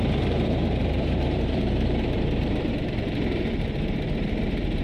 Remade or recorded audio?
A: remade